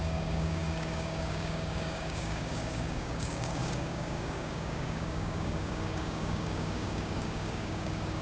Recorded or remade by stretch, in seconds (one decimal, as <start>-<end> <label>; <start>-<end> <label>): 0.0-8.2 remade